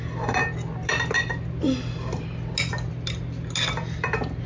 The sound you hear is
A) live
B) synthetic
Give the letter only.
A